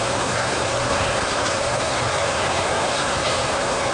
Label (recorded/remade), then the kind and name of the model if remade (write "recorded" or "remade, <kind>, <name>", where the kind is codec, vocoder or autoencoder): remade, codec, SNAC